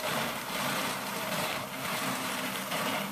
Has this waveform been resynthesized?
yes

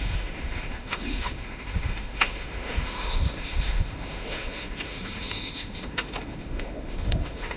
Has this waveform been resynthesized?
yes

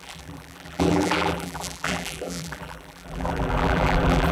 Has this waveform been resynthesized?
yes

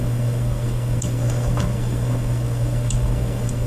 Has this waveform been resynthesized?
yes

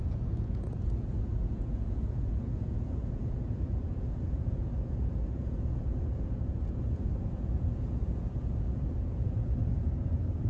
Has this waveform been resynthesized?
yes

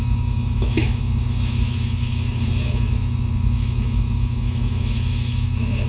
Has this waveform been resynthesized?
yes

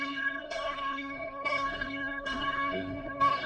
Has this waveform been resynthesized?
yes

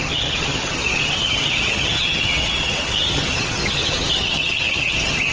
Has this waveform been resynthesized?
yes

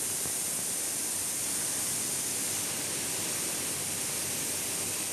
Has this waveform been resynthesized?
no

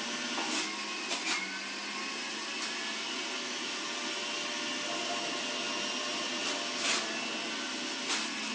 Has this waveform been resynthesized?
no